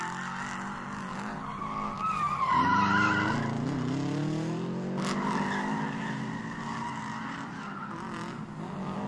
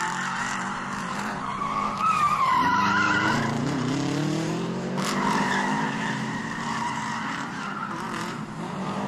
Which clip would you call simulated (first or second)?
second